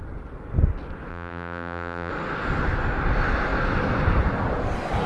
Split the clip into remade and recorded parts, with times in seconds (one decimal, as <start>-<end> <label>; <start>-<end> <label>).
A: 0.0-1.1 recorded; 1.1-2.1 remade; 2.1-5.1 recorded